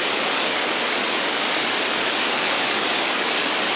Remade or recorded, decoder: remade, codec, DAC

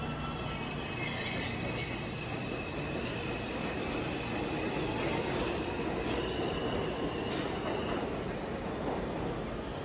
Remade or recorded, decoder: recorded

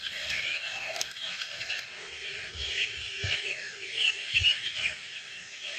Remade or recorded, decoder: remade, codec, DAC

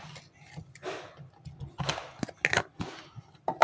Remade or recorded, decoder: recorded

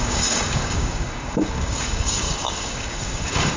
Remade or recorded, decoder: remade, codec, DAC